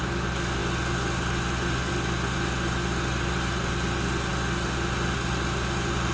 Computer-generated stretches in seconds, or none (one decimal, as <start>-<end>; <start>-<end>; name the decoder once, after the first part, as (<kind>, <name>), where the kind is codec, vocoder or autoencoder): none